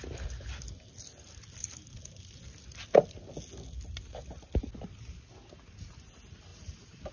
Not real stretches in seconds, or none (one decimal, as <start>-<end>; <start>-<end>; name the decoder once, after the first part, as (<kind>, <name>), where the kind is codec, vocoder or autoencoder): 6.5-7.1 (vocoder, BigVGAN v2)